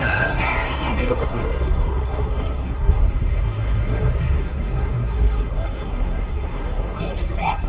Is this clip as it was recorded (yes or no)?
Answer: no